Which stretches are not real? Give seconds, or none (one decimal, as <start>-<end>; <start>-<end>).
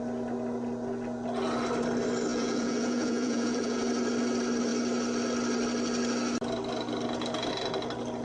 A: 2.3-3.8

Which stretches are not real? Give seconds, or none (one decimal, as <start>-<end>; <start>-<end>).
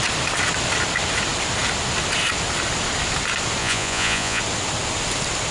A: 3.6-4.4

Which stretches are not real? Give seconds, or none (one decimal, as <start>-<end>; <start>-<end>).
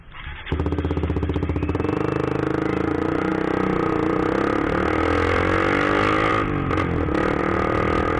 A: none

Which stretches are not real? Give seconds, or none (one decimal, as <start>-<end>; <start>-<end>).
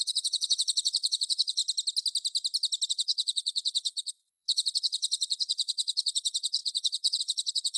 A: 0.0-1.6; 2.9-7.8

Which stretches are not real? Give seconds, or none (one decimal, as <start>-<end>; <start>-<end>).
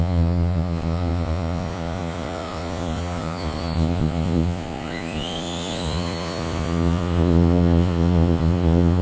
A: 0.0-9.0